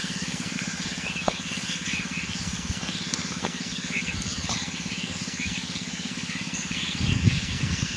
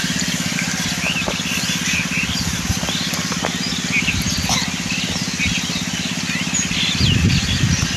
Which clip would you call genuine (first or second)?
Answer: second